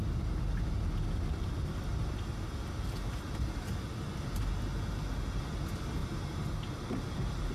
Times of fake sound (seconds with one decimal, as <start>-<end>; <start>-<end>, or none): none